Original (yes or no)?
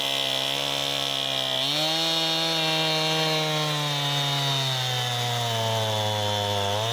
yes